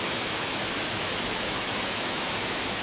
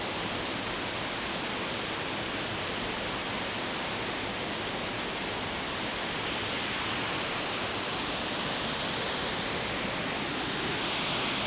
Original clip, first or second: second